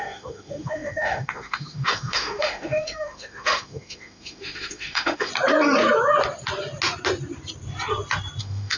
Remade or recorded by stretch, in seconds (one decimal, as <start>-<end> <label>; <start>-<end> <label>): 0.0-5.3 remade; 5.3-8.4 recorded; 8.4-8.8 remade

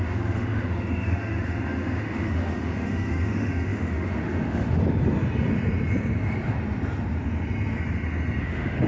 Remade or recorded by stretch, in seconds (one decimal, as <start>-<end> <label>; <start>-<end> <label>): 0.0-4.8 remade; 4.8-8.4 recorded; 8.4-8.9 remade

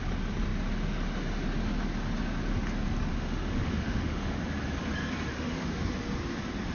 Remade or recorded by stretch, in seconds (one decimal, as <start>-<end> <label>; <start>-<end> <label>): 0.0-3.1 recorded; 3.1-4.4 remade; 4.4-5.3 recorded; 5.3-5.9 remade; 5.9-6.7 recorded